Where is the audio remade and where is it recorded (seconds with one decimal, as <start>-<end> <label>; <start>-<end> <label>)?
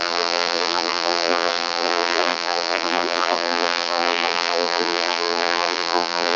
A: 0.0-6.4 remade